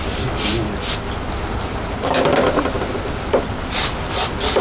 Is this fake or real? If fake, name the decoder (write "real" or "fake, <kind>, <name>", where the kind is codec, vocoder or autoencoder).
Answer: real